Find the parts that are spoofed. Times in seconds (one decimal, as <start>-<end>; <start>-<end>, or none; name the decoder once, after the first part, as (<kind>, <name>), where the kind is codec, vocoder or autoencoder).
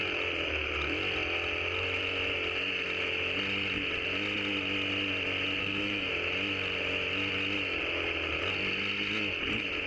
5.6-6.1 (codec, SNAC)